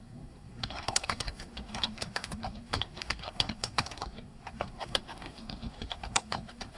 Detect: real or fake fake